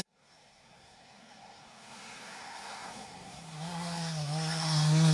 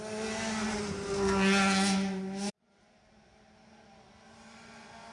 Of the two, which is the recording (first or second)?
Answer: second